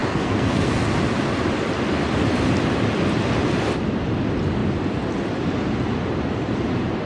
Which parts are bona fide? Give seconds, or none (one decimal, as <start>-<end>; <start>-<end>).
0.8-7.1